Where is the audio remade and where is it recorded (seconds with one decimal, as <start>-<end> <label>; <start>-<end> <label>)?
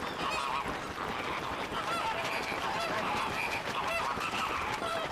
0.0-1.7 recorded; 1.7-5.1 remade